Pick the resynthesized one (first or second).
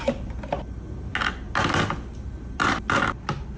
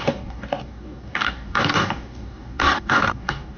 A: second